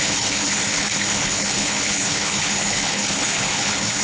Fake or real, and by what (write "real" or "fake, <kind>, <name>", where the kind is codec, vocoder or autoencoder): fake, codec, HILCodec